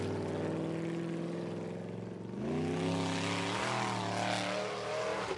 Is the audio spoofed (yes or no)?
no